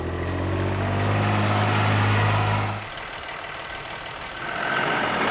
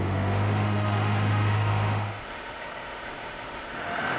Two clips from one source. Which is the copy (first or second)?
second